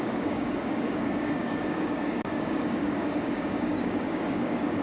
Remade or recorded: remade